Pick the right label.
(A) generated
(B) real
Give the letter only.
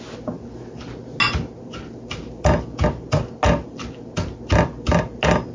B